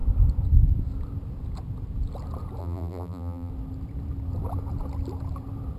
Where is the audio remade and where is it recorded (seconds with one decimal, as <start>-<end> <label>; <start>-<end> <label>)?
0.0-2.6 recorded; 2.6-3.5 remade; 3.5-5.8 recorded